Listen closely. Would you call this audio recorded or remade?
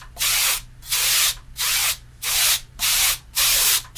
remade